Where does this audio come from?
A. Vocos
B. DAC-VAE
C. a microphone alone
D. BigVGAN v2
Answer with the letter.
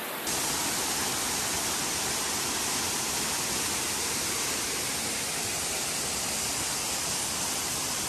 C